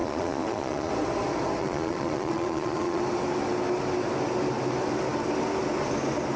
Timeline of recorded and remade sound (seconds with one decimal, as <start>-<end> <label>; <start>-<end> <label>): 0.0-0.9 remade; 0.9-1.6 recorded; 1.6-3.0 remade; 3.0-6.4 recorded